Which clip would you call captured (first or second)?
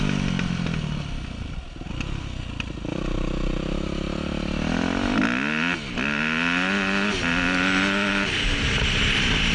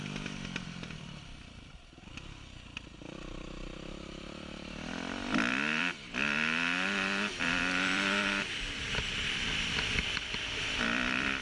first